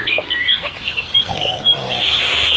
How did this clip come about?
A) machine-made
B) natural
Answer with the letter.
A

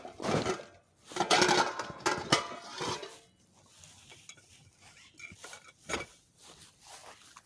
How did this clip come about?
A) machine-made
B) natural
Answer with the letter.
B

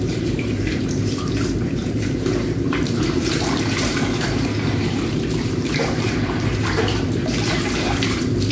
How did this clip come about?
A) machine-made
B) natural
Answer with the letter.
A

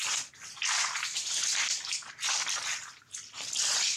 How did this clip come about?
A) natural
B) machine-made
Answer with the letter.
A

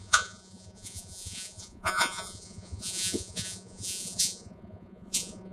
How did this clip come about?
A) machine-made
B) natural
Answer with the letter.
A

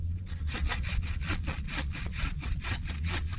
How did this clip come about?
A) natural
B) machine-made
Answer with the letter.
B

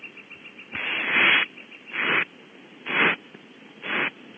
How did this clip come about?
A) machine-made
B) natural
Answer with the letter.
B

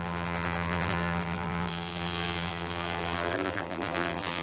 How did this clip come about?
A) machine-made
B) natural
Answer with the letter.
A